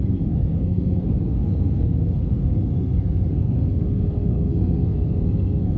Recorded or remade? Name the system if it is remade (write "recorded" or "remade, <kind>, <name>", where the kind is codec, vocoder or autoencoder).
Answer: remade, codec, SNAC